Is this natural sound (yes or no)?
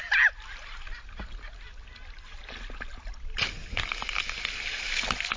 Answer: yes